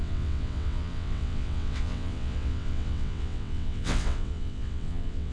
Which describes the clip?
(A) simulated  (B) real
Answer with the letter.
A